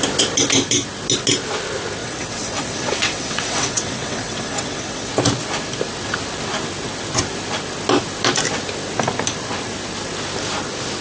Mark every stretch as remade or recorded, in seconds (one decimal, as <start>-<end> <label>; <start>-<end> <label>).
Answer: 0.0-2.0 recorded; 2.0-5.1 remade; 5.1-11.0 recorded